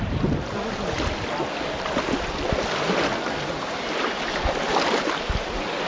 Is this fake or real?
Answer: real